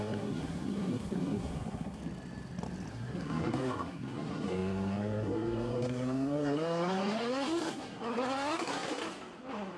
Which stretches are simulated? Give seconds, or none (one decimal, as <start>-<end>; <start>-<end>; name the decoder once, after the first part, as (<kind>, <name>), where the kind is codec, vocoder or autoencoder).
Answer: 0.0-2.0 (codec, SNAC); 2.9-9.0